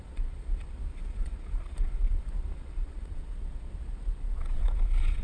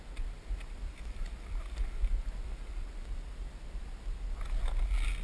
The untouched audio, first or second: second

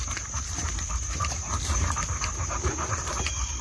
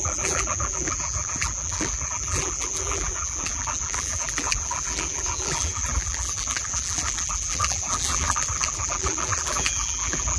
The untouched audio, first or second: first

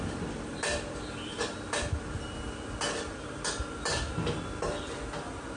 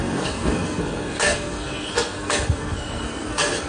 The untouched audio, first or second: first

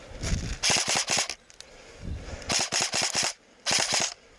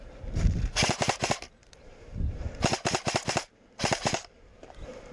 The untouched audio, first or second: first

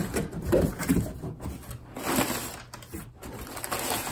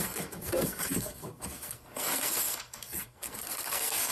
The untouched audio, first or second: first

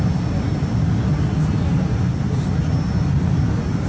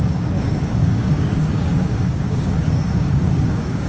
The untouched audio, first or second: first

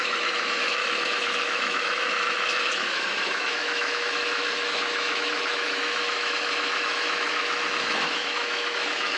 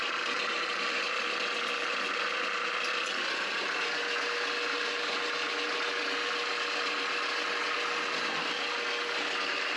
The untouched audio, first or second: second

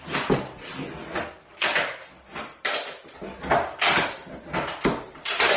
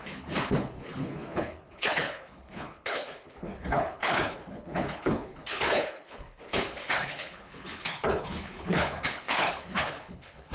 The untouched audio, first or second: first